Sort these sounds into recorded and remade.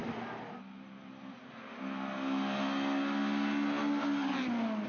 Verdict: recorded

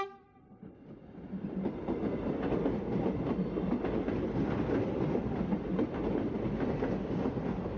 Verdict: recorded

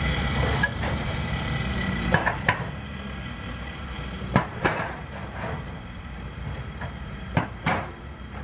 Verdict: remade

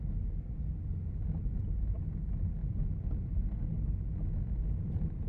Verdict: recorded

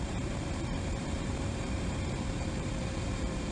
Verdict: remade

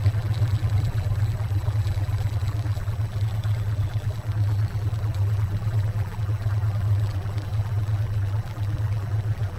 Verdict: remade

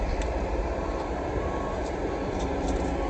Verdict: remade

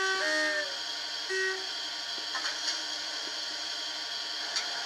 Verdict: recorded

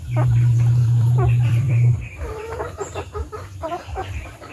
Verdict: remade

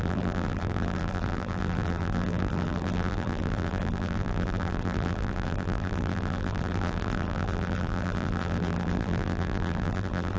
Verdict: remade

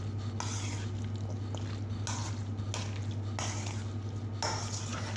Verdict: recorded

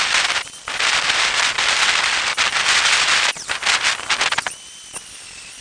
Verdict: remade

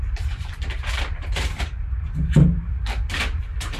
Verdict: remade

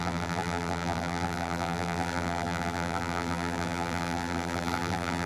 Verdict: remade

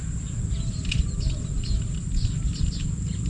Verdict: recorded